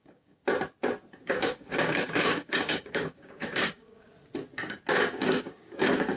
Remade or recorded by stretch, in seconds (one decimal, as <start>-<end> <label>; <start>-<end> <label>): 0.0-0.4 remade; 0.4-1.2 recorded; 1.2-4.1 remade; 4.1-4.9 recorded; 4.9-6.2 remade